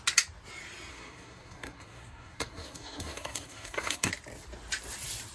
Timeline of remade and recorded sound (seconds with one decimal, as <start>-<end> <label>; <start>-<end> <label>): 0.0-0.9 recorded; 0.9-4.1 remade; 4.1-5.3 recorded